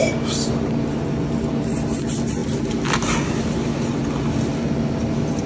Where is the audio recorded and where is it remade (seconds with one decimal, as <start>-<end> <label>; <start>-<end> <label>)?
0.0-5.5 recorded